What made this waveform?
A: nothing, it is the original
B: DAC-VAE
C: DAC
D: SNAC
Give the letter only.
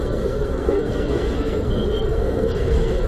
D